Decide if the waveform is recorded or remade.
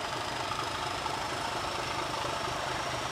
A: remade